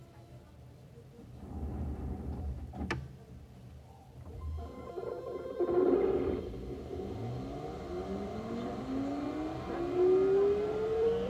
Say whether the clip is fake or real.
fake